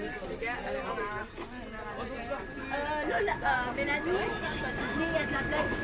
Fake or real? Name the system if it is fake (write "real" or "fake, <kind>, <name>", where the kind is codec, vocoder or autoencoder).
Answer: real